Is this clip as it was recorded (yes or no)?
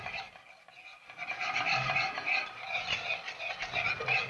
yes